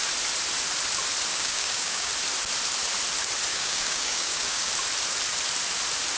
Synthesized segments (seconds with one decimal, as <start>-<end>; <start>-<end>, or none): 1.3-2.1; 3.5-4.7